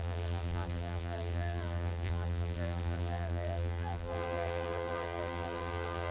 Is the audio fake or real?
fake